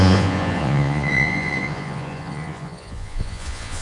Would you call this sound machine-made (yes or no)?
yes